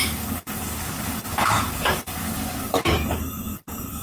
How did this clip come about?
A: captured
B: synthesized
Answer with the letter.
B